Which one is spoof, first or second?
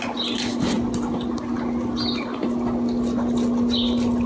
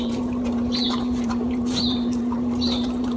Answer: second